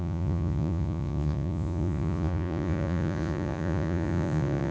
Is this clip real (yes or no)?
no